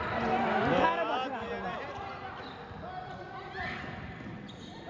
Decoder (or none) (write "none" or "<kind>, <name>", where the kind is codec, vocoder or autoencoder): none